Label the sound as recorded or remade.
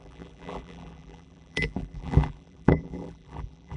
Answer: remade